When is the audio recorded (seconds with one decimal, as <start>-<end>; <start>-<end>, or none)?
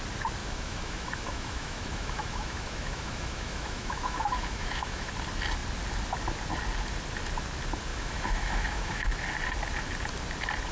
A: 0.0-0.4; 5.1-7.9; 9.1-10.7